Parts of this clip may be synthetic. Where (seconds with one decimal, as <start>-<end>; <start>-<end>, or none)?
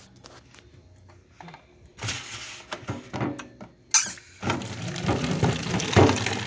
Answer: none